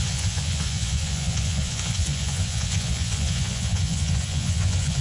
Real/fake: fake